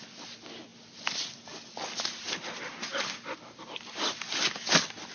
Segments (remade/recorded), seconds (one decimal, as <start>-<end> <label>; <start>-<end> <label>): 0.0-5.1 recorded

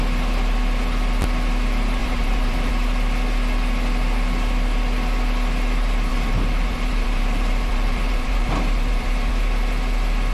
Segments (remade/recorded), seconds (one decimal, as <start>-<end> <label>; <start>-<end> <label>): 0.0-2.0 recorded; 2.0-2.7 remade; 2.7-6.1 recorded; 6.1-9.3 remade; 9.3-10.3 recorded

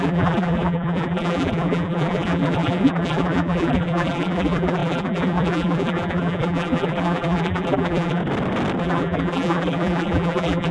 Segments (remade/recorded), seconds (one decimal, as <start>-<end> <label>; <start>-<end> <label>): 0.0-8.2 remade; 8.2-8.8 recorded; 8.8-10.7 remade

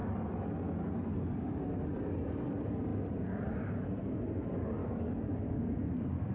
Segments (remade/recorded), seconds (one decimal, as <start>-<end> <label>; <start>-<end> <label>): 0.0-4.8 recorded; 4.8-6.3 remade